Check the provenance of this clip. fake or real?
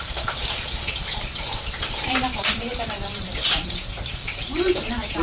fake